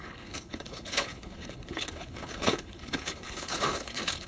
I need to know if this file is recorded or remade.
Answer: remade